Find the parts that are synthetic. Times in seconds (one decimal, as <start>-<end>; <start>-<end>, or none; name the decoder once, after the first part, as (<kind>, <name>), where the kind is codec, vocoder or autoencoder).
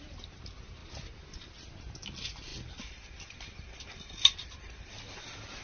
0.8-1.5 (vocoder, BigVGAN v2); 2.5-5.6